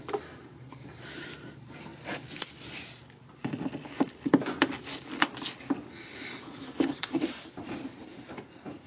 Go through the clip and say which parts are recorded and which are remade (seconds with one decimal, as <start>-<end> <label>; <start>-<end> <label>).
0.0-1.9 remade; 1.9-6.9 recorded; 6.9-8.9 remade